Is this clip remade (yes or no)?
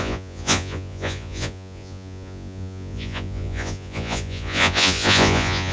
yes